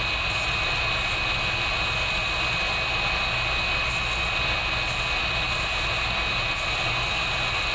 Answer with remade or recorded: recorded